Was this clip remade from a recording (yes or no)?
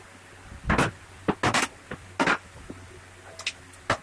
no